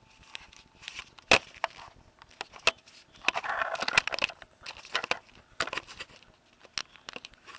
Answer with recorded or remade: recorded